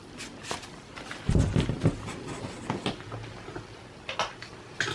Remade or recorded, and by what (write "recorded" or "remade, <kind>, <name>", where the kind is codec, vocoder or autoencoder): recorded